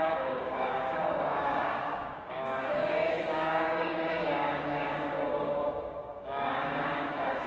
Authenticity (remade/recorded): remade